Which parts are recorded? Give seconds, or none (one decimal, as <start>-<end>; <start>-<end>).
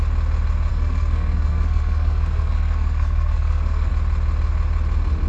0.0-0.7; 3.9-5.3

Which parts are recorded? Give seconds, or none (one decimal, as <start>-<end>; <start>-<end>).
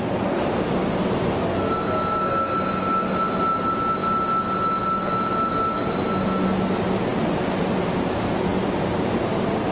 0.0-8.5